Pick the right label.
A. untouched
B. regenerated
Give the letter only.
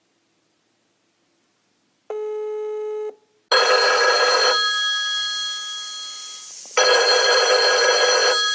A